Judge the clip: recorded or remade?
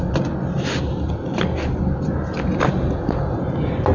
recorded